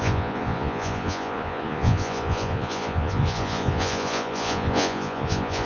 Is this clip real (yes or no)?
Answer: no